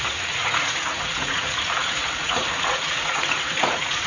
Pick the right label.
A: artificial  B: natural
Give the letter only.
A